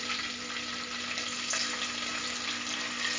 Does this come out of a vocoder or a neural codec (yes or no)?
no